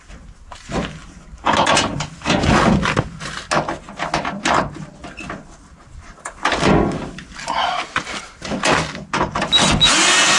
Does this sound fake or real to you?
real